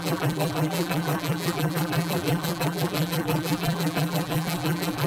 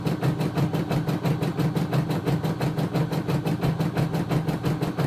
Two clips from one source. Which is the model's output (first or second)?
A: first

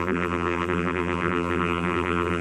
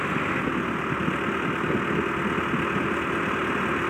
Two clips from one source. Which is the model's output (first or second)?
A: first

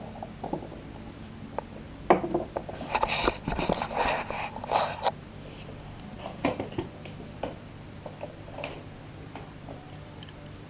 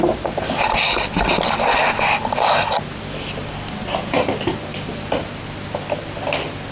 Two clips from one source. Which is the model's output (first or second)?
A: first